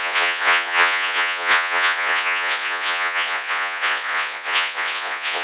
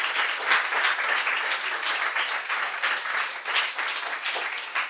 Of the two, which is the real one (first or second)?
second